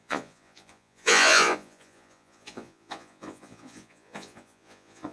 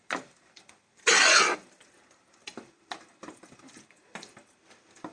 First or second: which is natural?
second